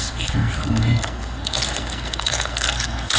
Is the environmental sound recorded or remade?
remade